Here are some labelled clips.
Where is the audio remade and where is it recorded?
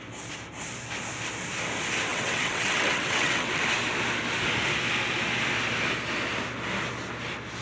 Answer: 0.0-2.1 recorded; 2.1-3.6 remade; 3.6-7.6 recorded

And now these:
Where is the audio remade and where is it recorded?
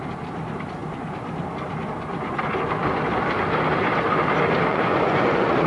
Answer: 0.0-4.7 recorded; 4.7-5.7 remade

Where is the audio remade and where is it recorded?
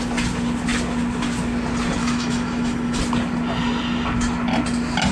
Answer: 0.0-2.0 recorded; 2.0-3.0 remade; 3.0-5.1 recorded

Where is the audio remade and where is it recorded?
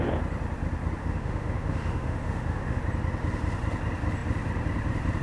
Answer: 0.0-1.0 recorded; 1.0-2.8 remade; 2.8-5.2 recorded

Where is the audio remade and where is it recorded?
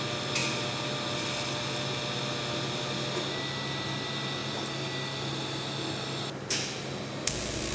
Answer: 0.0-7.7 recorded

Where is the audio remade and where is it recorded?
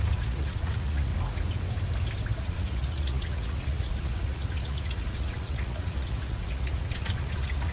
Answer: 0.0-1.1 remade; 1.1-2.4 recorded; 2.4-7.7 remade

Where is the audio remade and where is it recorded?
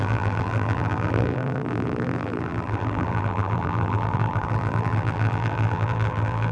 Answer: 0.0-6.5 remade